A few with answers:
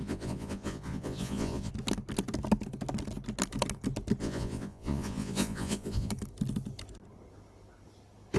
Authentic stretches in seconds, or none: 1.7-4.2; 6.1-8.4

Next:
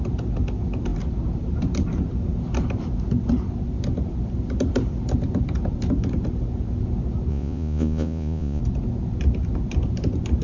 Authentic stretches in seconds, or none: 0.0-7.3; 8.6-10.4

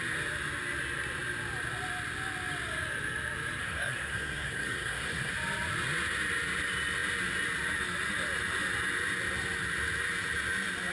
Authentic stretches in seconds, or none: 0.0-3.6; 5.3-10.9

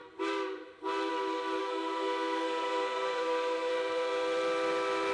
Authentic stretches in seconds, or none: 0.0-1.6; 3.7-5.1

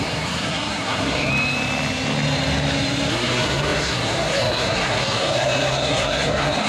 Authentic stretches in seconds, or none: 1.3-3.1

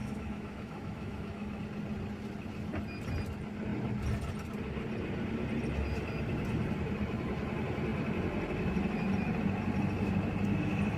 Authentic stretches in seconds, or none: 1.6-11.0

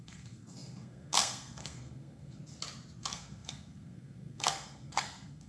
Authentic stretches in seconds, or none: 2.4-3.0

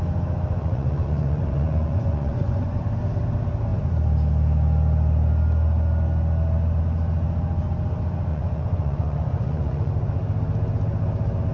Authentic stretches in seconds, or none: 0.0-0.6; 2.8-8.3; 9.9-11.5